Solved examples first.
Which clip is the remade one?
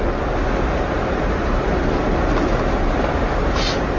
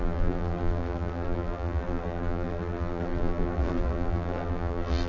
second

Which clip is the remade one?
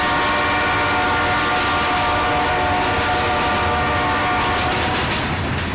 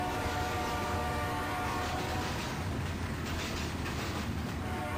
second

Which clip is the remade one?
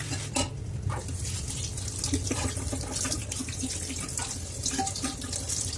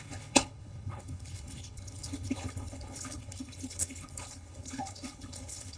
second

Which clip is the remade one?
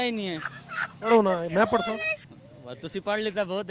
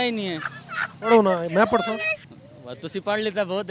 first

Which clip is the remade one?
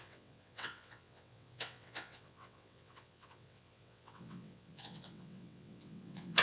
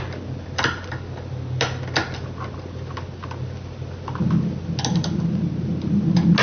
first